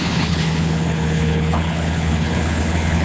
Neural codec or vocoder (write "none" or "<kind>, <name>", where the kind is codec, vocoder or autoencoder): codec, HILCodec